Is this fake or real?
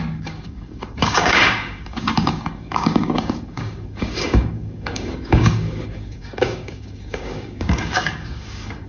fake